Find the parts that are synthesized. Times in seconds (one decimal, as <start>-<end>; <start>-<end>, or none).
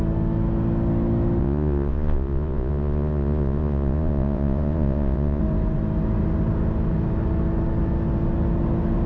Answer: 1.4-5.4